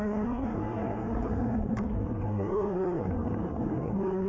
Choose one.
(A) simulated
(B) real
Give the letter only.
A